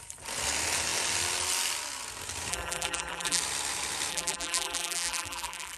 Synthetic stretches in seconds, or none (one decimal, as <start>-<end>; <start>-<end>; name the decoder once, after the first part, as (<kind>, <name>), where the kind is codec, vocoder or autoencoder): 2.5-3.4 (vocoder, BigVGAN v2); 4.1-5.8